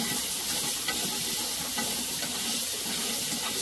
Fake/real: real